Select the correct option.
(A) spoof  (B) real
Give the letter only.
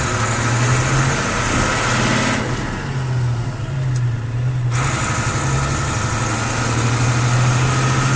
B